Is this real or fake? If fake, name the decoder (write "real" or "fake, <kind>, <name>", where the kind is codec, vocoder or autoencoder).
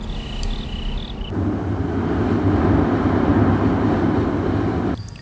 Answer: real